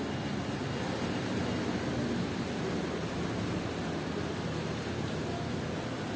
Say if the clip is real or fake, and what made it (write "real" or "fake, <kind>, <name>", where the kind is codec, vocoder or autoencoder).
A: real